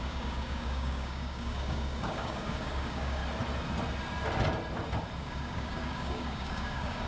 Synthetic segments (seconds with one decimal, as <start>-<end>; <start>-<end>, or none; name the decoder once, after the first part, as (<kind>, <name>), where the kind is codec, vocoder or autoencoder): 0.0-3.2 (codec, DAC); 5.2-7.1